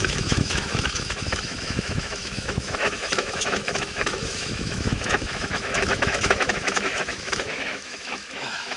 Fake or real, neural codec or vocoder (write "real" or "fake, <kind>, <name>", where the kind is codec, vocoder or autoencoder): fake, autoencoder, DAC-VAE